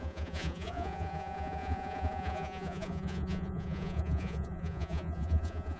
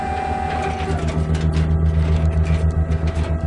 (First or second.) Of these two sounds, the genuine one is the second